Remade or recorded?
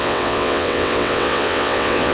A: remade